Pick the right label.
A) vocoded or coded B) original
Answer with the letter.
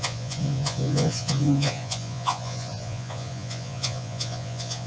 A